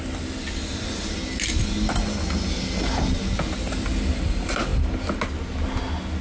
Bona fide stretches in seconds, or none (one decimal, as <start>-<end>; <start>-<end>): 0.0-6.2